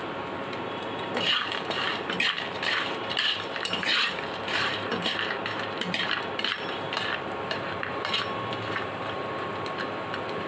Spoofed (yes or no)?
yes